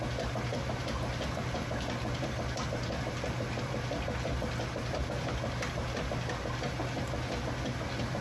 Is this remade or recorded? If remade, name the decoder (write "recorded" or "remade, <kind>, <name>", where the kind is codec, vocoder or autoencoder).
recorded